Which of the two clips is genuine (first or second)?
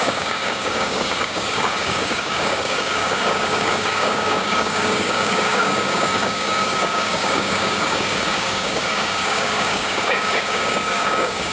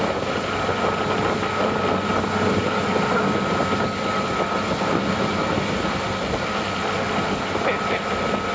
second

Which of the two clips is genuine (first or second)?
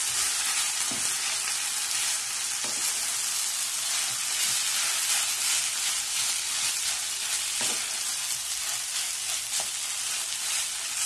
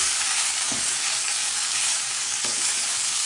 first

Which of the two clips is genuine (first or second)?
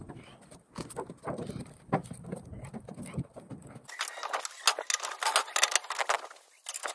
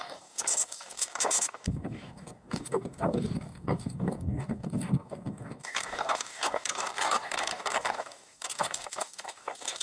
first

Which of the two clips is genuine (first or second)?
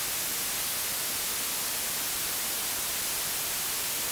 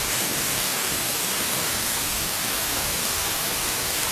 first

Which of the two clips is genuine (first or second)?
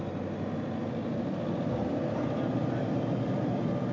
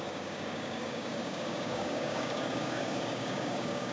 first